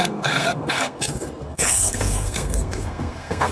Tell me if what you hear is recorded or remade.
remade